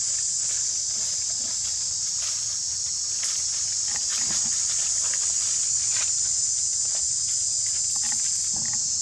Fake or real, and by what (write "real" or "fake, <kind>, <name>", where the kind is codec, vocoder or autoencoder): real